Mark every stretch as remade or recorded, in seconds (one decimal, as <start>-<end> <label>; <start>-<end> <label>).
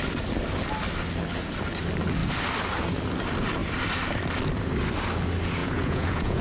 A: 0.0-5.6 recorded; 5.6-6.4 remade